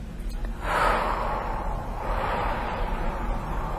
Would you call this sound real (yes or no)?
yes